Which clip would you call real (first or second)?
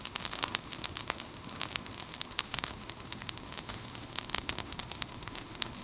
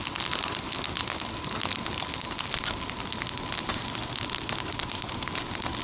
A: second